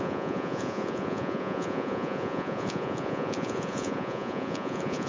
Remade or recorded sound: remade